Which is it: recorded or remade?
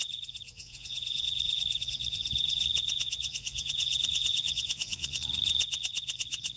remade